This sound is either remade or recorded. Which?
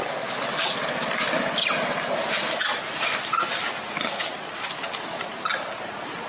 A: recorded